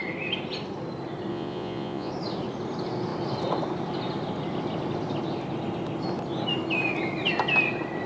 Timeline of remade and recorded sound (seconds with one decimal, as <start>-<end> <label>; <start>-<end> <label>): 0.0-1.3 recorded; 1.3-2.1 remade; 2.1-8.1 recorded